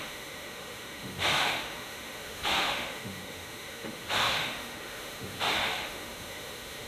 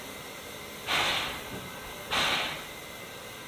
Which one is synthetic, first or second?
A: first